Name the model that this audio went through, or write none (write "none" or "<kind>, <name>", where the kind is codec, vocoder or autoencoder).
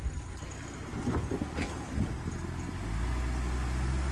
none